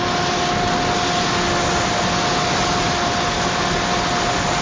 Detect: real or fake real